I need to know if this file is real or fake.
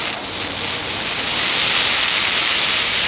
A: real